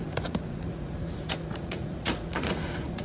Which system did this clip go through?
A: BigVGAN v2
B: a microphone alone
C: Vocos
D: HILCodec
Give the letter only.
C